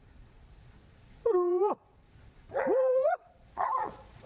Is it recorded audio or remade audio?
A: remade